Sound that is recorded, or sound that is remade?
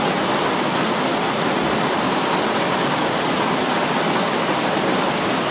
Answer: recorded